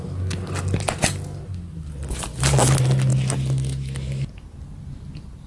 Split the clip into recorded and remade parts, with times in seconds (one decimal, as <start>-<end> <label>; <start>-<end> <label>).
0.0-5.5 recorded